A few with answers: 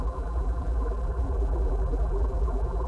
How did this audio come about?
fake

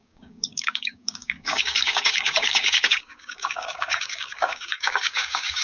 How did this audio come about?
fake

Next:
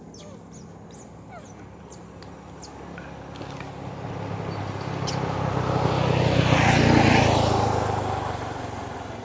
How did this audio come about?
real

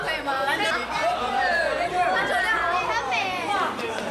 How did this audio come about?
fake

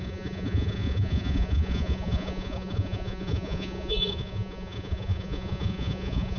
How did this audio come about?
fake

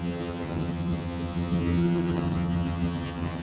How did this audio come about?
fake